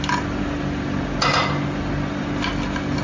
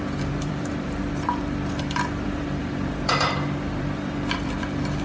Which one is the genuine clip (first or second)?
first